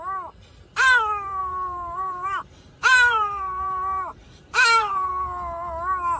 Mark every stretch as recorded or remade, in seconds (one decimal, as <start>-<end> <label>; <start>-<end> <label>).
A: 0.0-1.4 recorded; 1.4-5.1 remade; 5.1-6.2 recorded